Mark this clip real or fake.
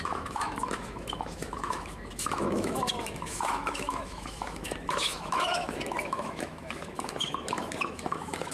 fake